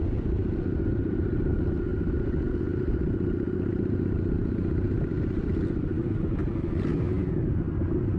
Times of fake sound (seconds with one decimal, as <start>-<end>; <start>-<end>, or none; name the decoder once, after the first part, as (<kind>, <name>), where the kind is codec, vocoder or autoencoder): none